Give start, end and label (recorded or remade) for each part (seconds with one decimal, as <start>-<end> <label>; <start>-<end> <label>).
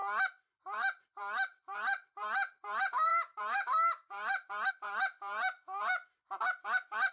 0.0-0.6 recorded; 0.6-5.9 remade; 5.9-7.1 recorded